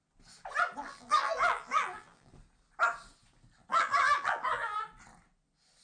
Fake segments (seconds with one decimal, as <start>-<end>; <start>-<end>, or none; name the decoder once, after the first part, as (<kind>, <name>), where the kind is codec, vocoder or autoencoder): 0.8-2.3 (vocoder, BigVGAN v2); 3.7-4.8